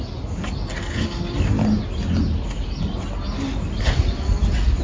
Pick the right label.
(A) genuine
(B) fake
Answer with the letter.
A